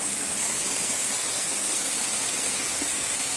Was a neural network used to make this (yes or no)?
yes